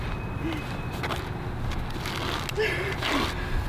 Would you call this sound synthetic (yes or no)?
no